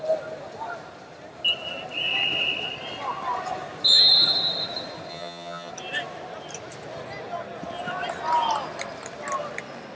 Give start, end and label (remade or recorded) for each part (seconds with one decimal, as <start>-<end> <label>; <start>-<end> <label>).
0.0-5.1 recorded; 5.1-5.7 remade; 5.7-9.9 recorded